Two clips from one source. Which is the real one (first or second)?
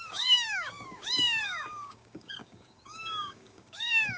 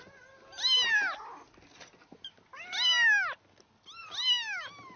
second